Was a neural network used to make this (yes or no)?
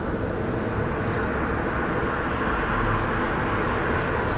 yes